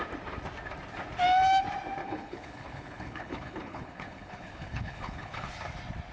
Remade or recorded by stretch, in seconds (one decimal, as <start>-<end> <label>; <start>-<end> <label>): 0.0-2.0 recorded; 2.0-5.5 remade; 5.5-6.1 recorded